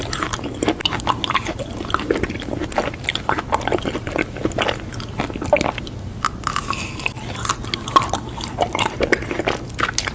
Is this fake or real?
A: real